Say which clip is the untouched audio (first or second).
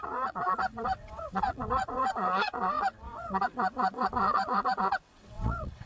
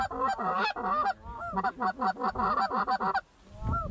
second